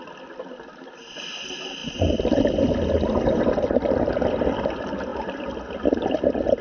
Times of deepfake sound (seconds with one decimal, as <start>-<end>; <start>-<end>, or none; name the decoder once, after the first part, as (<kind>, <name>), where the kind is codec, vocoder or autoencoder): 1.8-3.5 (vocoder, BigVGAN v2)